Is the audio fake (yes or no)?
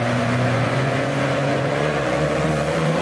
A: yes